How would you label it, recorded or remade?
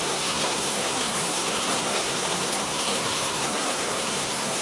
remade